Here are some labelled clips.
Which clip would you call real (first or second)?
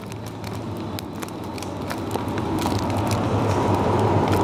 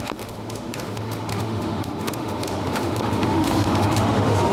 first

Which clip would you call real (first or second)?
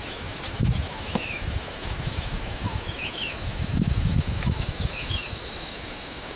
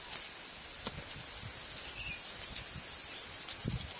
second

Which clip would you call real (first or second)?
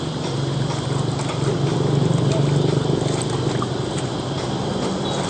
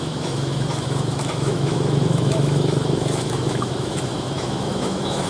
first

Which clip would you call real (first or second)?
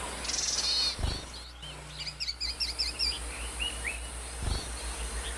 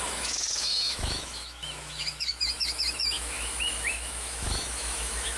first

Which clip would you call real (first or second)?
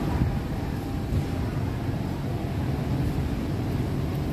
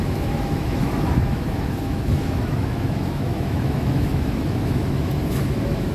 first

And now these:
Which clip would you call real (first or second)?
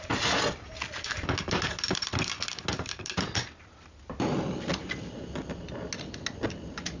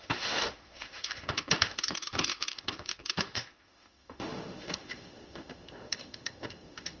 first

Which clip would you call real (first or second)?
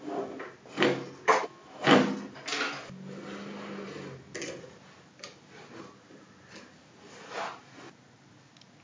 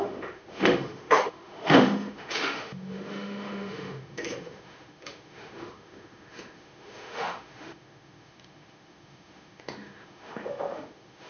first